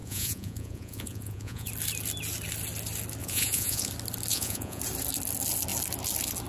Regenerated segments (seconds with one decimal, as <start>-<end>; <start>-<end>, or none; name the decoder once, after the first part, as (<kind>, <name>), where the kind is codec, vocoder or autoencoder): 0.0-1.7 (vocoder, Vocos); 3.2-3.9; 4.3-4.8